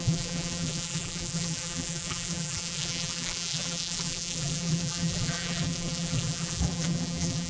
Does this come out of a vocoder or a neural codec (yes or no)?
yes